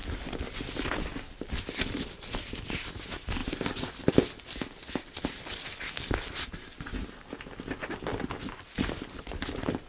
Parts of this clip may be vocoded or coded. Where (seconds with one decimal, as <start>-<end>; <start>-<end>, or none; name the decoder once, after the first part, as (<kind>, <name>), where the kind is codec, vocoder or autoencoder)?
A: none